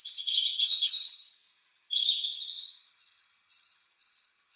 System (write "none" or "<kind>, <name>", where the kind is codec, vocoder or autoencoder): vocoder, HiFi-GAN